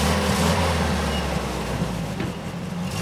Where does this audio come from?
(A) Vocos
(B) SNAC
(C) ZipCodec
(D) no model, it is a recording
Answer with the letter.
D